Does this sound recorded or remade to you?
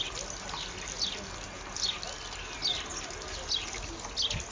recorded